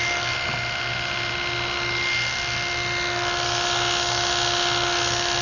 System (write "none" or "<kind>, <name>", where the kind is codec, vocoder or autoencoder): none